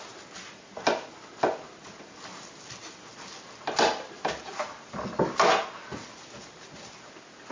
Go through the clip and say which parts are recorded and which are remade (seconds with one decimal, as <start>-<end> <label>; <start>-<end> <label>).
0.0-7.5 recorded

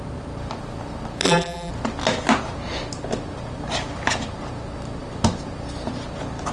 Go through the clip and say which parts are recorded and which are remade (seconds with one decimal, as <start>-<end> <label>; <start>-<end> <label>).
0.0-1.2 recorded; 1.2-1.7 remade; 1.7-6.5 recorded

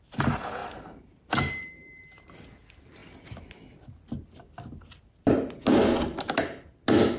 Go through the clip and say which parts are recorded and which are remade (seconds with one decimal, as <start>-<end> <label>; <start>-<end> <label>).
0.0-3.0 remade; 3.0-7.2 recorded